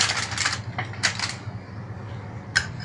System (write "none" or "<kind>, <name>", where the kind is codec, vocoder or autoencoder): none